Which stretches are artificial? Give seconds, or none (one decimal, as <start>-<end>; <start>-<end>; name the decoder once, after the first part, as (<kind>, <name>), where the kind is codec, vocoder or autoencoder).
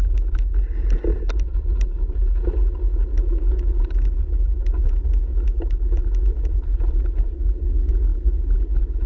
none